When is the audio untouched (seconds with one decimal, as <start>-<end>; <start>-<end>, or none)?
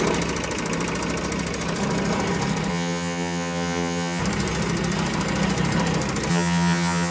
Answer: 0.0-2.7; 4.2-6.3